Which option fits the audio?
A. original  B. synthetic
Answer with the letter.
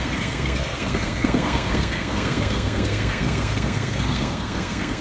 B